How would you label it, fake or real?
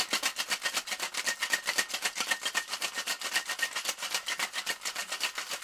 real